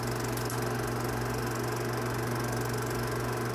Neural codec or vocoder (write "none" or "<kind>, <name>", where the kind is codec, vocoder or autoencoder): none